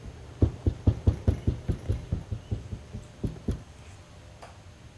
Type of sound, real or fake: real